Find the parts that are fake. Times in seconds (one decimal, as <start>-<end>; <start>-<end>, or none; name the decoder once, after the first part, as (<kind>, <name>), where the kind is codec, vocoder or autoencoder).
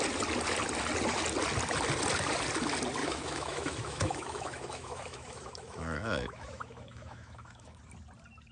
3.0-7.8 (autoencoder, DAC-VAE)